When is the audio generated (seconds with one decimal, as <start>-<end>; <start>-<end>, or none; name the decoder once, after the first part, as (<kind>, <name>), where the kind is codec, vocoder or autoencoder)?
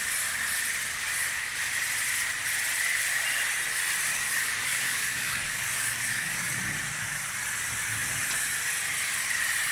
4.1-6.6 (codec, DAC)